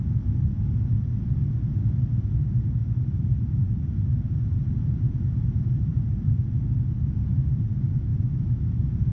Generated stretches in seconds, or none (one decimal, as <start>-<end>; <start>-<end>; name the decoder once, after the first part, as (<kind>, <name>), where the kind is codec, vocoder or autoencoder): 2.8-5.0 (vocoder, BigVGAN v2); 8.1-9.1